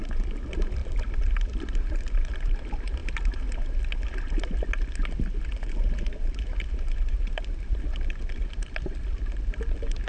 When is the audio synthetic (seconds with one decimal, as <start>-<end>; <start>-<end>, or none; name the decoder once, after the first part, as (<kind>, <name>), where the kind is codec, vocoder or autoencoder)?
0.0-3.0 (vocoder, BigVGAN v2); 7.2-10.1